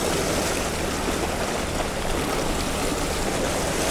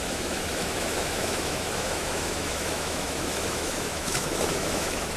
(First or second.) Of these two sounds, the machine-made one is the second